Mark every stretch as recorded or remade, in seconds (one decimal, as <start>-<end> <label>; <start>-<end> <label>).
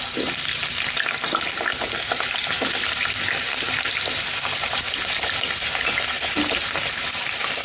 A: 0.0-7.6 recorded